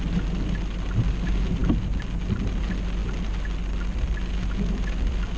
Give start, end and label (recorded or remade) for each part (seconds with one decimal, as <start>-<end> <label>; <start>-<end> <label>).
0.0-5.4 recorded